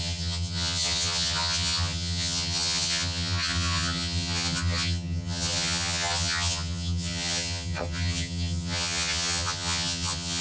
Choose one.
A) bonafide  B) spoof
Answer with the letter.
B